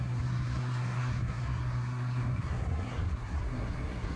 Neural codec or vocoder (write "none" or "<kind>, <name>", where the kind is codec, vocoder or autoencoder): codec, SNAC